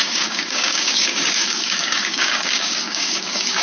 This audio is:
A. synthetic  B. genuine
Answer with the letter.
A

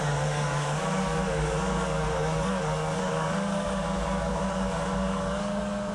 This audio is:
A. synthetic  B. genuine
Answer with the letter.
A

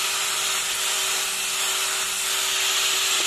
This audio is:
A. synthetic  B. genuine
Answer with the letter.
B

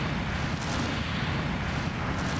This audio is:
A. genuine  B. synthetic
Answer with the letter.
A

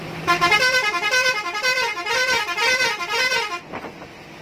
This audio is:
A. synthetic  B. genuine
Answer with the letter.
B